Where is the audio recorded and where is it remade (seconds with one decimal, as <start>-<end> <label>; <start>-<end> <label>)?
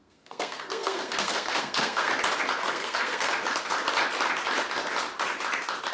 0.0-2.1 remade; 2.1-2.7 recorded; 2.7-3.3 remade; 3.3-5.9 recorded